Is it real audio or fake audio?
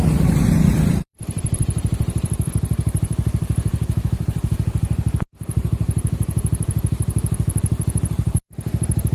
fake